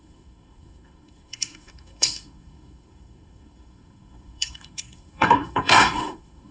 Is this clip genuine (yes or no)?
no